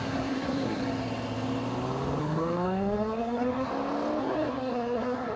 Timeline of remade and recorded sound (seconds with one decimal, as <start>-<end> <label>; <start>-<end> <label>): 0.0-0.8 remade; 0.8-2.2 recorded; 2.2-3.7 remade; 3.7-4.2 recorded; 4.2-5.4 remade

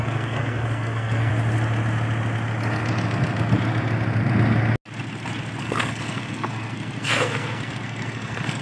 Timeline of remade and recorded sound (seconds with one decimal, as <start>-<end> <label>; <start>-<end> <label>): 0.0-1.3 remade; 1.3-5.6 recorded; 5.6-8.6 remade

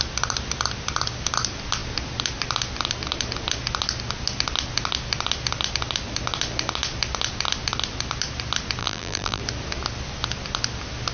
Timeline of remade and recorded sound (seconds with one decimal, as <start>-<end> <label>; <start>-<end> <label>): 0.0-8.8 recorded; 8.8-9.4 remade; 9.4-11.1 recorded

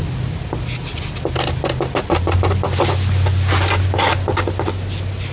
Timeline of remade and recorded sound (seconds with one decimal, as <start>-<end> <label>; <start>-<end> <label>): 0.0-5.3 recorded

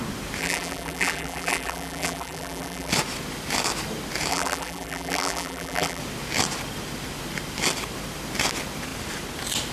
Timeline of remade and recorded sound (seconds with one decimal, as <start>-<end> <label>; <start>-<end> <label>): 0.0-0.4 recorded; 0.4-2.9 remade; 2.9-4.3 recorded; 4.3-6.0 remade; 6.0-9.7 recorded

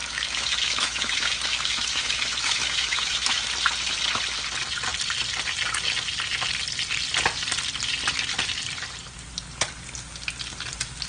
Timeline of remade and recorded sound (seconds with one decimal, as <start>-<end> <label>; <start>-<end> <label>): 0.0-3.5 remade; 3.5-11.1 recorded

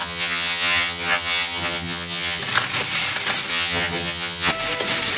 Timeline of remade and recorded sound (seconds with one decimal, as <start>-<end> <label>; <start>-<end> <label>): 0.0-2.4 remade; 2.4-3.5 recorded; 3.5-4.5 remade; 4.5-5.2 recorded